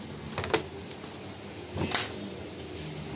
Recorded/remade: recorded